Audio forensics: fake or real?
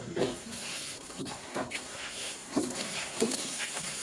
fake